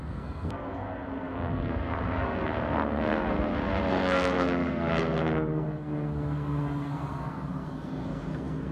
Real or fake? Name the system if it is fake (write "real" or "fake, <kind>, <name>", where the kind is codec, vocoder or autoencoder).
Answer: fake, codec, SNAC